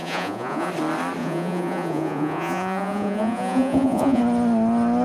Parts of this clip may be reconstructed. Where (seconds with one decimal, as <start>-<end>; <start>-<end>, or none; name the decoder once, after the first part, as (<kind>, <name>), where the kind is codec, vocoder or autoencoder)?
0.0-0.7 (vocoder, Vocos); 1.2-4.2

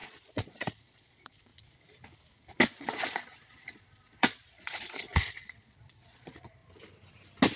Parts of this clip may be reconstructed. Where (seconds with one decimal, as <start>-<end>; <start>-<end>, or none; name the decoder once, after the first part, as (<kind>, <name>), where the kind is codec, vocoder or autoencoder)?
0.0-1.5 (vocoder, Vocos); 2.7-6.6

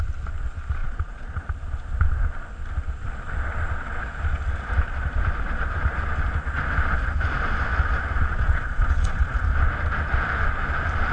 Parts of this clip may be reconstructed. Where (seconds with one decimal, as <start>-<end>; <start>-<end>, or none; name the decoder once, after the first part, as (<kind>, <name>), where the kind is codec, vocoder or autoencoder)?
0.8-1.4 (vocoder, Vocos); 8.3-9.4